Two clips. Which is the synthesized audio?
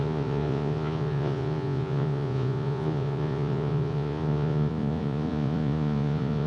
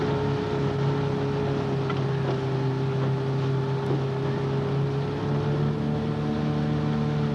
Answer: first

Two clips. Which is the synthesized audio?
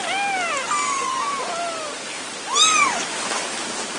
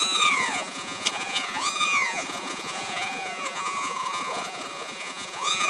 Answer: second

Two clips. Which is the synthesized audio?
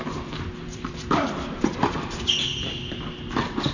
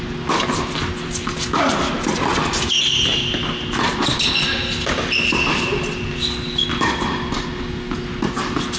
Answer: first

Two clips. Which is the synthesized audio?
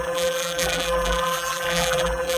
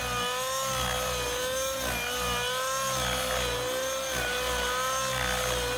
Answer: first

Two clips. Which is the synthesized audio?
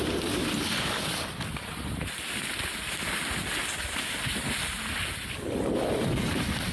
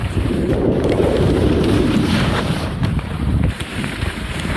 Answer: second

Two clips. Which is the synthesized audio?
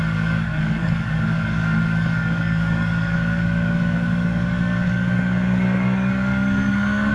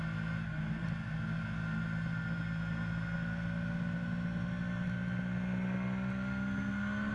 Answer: first